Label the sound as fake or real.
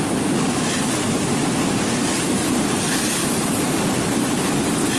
real